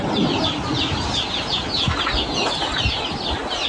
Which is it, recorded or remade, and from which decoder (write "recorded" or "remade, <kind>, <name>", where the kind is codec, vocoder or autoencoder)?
recorded